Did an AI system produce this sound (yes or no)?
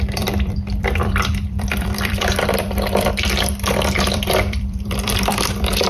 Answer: yes